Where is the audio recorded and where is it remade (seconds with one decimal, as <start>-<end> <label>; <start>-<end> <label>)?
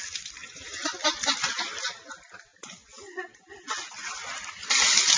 0.0-5.2 recorded